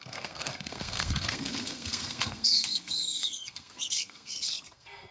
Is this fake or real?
fake